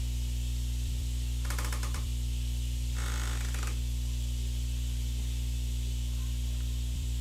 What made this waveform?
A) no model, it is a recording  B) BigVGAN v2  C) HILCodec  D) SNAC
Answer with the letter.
B